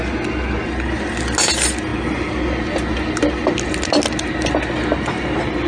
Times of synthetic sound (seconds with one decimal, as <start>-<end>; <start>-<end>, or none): none